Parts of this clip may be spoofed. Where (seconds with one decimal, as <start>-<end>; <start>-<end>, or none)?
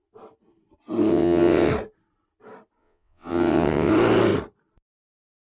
1.1-1.7; 2.8-3.9